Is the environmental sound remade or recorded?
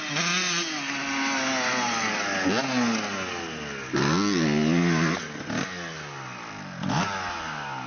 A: recorded